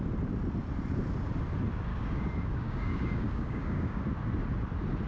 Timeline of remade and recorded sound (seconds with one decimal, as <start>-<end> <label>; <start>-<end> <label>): 0.0-1.9 recorded; 1.9-4.0 remade; 4.0-5.1 recorded